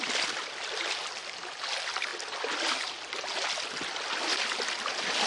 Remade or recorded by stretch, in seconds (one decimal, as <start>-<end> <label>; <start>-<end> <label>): 0.0-5.3 recorded